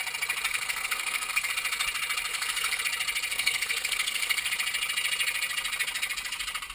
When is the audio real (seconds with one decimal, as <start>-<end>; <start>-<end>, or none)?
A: 0.0-0.5; 1.5-2.3; 2.8-3.3; 4.5-6.7